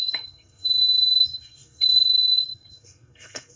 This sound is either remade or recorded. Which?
remade